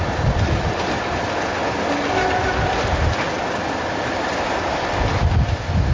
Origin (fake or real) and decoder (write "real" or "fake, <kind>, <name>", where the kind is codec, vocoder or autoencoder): real